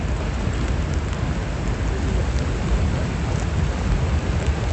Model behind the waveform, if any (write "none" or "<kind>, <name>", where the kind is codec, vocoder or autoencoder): none